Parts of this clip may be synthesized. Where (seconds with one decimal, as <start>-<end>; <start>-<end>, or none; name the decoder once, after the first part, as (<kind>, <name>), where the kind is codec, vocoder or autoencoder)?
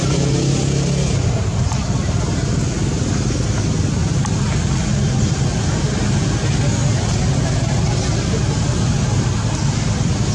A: none